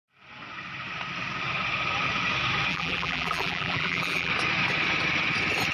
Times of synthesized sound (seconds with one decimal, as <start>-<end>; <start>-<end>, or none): 2.7-4.3